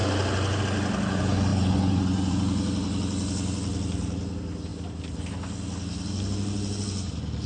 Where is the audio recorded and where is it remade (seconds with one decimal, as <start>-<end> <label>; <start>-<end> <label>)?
0.0-1.5 recorded; 1.5-2.3 remade; 2.3-7.5 recorded